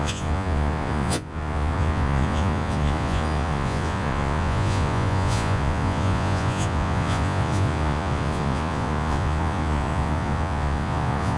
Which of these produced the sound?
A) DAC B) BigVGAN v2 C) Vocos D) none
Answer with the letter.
C